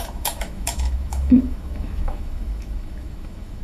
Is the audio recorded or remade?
remade